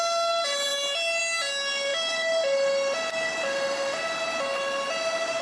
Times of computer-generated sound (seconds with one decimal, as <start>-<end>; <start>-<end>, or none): none

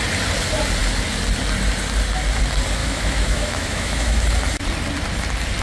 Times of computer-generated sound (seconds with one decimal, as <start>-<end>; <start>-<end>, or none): 2.8-4.2

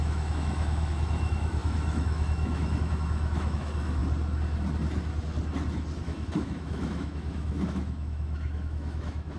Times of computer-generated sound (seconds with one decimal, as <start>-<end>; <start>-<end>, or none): 0.0-4.0; 6.0-9.4

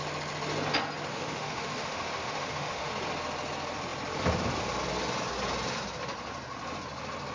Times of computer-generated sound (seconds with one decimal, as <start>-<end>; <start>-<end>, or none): 1.1-2.9

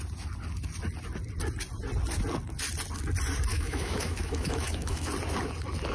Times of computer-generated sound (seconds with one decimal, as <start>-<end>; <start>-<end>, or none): 3.5-5.1

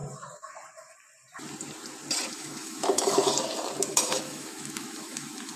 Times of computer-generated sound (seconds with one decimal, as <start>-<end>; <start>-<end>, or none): 2.3-3.3; 3.9-5.6

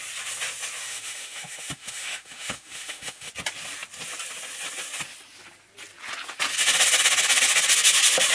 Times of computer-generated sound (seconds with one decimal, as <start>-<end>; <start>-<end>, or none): 0.8-3.3